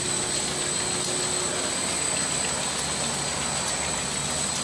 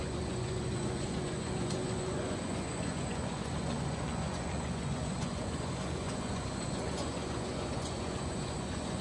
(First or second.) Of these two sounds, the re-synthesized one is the second